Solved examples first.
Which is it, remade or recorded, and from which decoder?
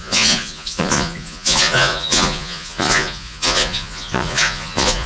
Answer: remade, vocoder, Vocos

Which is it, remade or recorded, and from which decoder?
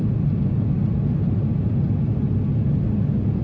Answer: recorded